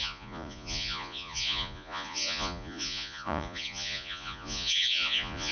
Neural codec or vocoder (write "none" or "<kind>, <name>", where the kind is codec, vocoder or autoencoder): vocoder, Vocos